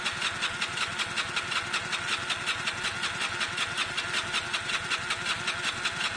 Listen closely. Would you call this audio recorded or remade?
recorded